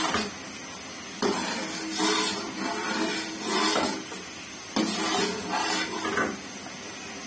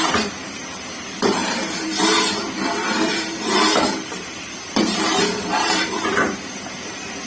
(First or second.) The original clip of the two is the first